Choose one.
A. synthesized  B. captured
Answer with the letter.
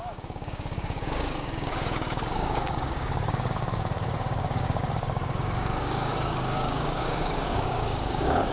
A